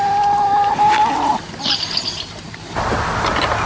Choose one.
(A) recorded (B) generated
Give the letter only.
A